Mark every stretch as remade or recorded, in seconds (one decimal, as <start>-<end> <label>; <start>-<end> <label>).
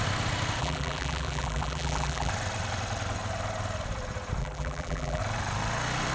0.0-0.6 recorded; 0.6-2.3 remade; 2.3-4.4 recorded; 4.4-5.2 remade; 5.2-6.1 recorded